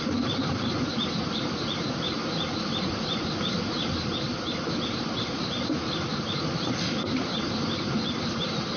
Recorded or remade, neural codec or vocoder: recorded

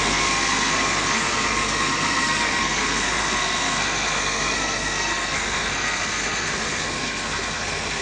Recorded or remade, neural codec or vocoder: remade, codec, SNAC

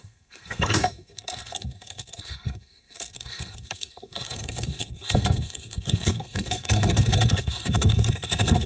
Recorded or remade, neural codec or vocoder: remade, codec, SNAC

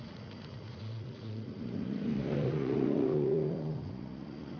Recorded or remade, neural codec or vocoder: remade, vocoder, Vocos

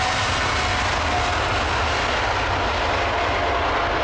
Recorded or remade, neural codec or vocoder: recorded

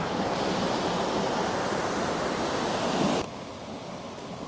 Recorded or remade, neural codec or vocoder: recorded